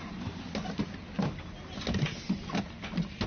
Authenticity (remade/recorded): recorded